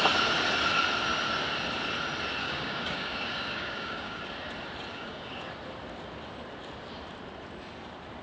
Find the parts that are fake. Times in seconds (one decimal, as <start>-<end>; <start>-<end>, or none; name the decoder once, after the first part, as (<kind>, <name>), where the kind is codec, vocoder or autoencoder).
2.4-4.2 (codec, DAC); 4.9-5.5